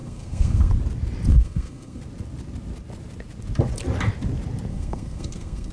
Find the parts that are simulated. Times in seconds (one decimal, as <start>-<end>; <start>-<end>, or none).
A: 0.0-0.7; 1.3-2.0; 4.7-5.7